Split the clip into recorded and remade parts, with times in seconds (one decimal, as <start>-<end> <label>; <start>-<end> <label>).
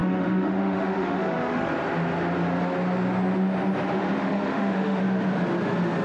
0.0-1.7 remade; 1.7-4.2 recorded; 4.2-5.0 remade; 5.0-6.0 recorded